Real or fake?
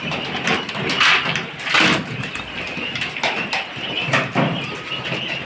real